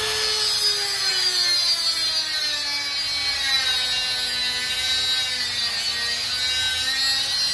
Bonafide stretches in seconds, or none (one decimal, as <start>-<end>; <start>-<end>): 0.0-7.5